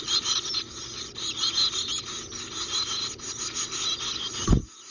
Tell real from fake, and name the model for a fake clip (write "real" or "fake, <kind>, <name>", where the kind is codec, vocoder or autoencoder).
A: real